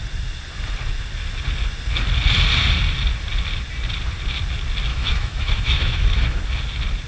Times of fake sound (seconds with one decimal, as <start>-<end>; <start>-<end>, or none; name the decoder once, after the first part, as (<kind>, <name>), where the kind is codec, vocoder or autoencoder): 4.9-6.4 (autoencoder, DAC-VAE)